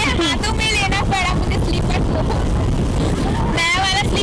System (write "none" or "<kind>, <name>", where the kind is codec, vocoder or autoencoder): none